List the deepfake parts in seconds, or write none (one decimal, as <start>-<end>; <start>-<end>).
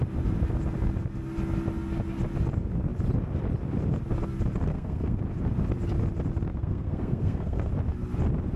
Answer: 4.7-5.2; 6.5-7.7